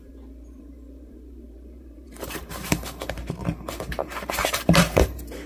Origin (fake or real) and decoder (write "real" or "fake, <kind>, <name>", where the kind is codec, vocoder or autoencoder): fake, vocoder, BigVGAN v2